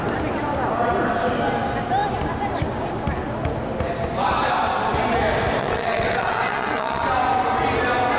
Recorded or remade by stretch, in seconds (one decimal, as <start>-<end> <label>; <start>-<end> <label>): 0.0-5.6 recorded; 5.6-7.1 remade; 7.1-8.2 recorded